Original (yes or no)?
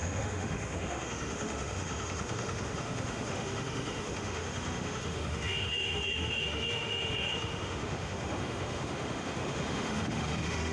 no